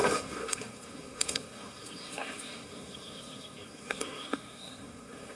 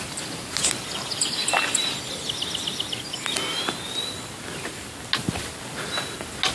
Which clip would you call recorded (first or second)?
second